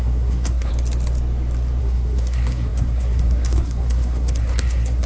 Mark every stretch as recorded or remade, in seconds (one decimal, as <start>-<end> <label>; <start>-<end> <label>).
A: 0.0-0.7 remade; 0.7-1.8 recorded; 1.8-5.1 remade